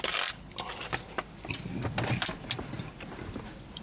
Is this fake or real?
real